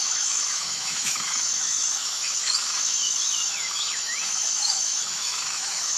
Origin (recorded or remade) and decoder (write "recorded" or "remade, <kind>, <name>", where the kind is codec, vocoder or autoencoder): remade, autoencoder, DAC-VAE